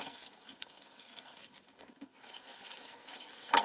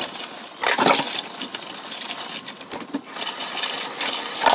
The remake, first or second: first